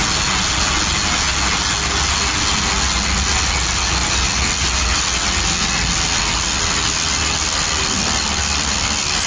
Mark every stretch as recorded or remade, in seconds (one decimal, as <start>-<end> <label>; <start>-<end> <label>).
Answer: 0.0-4.0 recorded; 4.0-5.0 remade; 5.0-9.3 recorded